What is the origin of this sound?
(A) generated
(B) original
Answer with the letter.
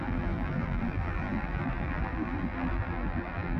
A